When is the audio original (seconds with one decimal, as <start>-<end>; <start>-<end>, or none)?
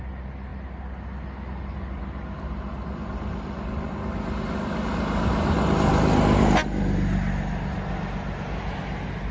0.0-9.3